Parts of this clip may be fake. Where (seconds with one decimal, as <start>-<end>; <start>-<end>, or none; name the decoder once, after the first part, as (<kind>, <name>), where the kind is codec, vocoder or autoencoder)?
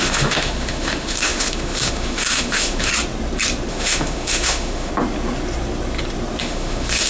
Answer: 0.0-2.9 (autoencoder, DAC-VAE); 3.7-4.9; 6.4-7.1